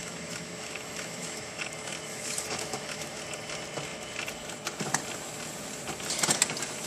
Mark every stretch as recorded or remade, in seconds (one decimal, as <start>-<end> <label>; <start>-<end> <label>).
0.0-1.6 remade; 1.6-2.1 recorded; 2.1-3.2 remade; 3.2-6.9 recorded